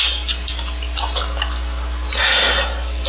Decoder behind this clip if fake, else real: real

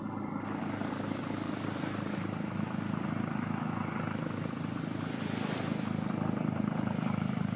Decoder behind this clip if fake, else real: real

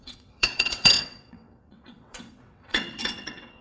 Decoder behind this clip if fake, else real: fake, vocoder, WaveNeXt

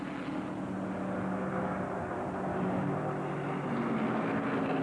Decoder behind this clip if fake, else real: real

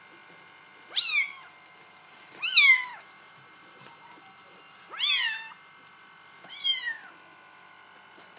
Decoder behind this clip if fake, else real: real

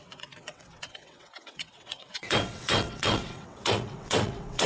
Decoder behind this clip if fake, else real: fake, vocoder, WaveNeXt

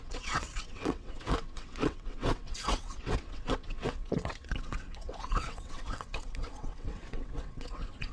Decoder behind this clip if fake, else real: fake, vocoder, WaveNeXt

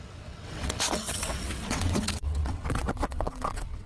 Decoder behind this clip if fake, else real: fake, vocoder, WaveNeXt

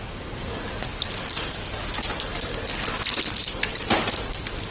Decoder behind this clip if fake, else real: real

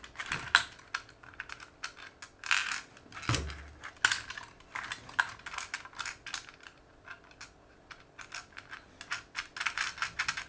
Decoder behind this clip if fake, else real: real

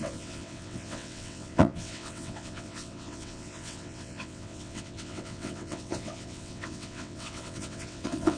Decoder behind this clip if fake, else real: fake, vocoder, WaveNeXt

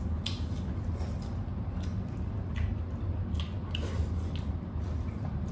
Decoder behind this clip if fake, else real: real